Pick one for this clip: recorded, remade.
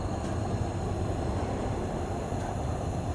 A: recorded